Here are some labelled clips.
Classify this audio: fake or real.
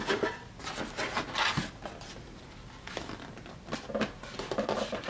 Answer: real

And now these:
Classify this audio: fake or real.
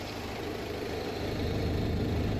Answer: real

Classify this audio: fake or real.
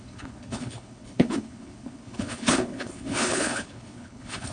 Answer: fake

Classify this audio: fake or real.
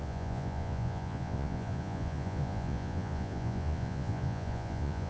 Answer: fake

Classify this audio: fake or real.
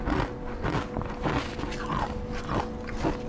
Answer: real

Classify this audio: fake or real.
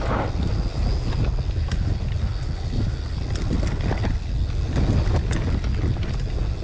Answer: real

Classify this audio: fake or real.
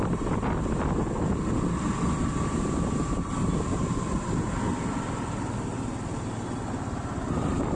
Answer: real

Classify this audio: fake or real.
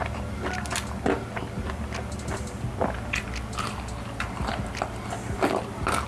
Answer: real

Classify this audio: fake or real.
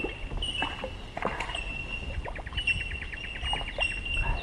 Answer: real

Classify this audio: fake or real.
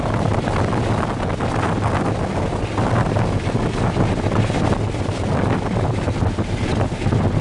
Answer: real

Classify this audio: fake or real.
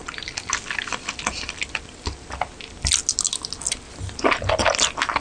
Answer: real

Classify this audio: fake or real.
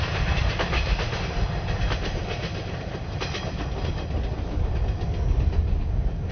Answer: real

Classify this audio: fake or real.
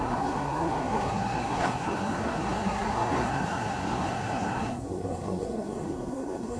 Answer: fake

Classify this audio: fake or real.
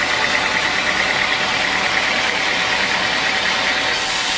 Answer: fake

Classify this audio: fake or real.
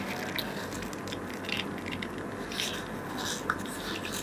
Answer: real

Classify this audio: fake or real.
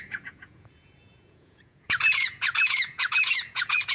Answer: fake